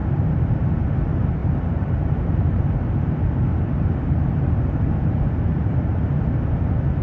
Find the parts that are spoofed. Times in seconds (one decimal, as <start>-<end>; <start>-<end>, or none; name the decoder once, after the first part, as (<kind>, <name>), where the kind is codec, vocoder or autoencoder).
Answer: 0.0-0.8 (vocoder, BigVGAN v2); 1.4-5.4; 5.9-6.5